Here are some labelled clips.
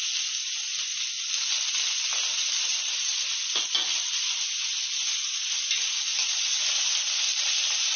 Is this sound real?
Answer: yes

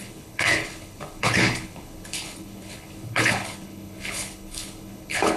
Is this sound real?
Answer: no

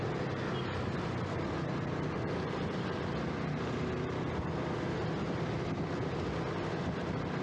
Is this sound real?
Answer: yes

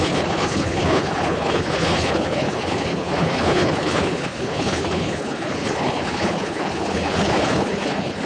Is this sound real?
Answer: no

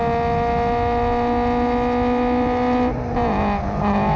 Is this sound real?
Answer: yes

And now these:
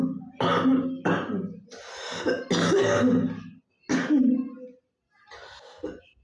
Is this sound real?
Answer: yes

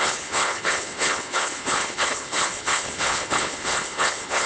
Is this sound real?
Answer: no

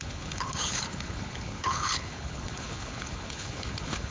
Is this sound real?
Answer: no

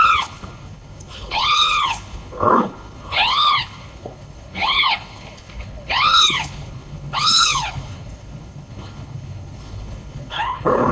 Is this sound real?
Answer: no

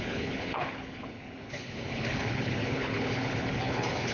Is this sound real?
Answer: no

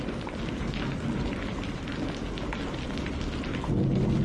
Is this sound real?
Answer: yes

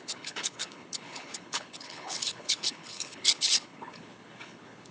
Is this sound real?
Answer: no